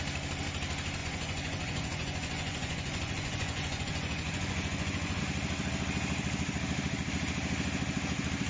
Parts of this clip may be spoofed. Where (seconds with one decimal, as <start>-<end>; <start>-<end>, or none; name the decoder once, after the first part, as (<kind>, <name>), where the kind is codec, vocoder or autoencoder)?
1.0-5.2 (vocoder, Vocos)